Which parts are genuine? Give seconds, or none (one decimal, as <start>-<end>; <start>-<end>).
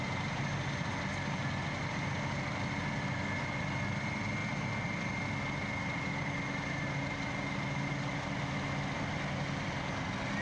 0.0-10.4